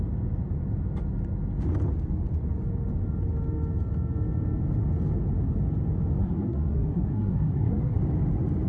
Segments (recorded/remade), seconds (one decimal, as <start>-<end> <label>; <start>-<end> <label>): 0.0-6.2 recorded; 6.2-8.0 remade; 8.0-8.7 recorded

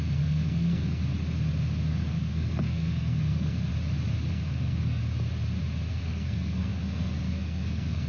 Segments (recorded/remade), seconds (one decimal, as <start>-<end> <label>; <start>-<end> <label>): 0.0-1.0 remade; 1.0-1.9 recorded; 1.9-3.7 remade; 3.7-4.3 recorded; 4.3-5.0 remade; 5.0-5.9 recorded; 5.9-8.1 remade